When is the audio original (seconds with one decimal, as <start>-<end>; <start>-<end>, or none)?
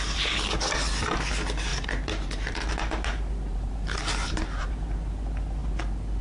0.0-1.7; 2.7-3.5; 4.7-6.2